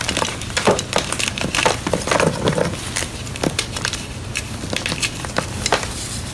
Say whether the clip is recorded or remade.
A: remade